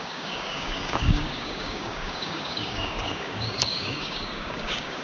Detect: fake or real fake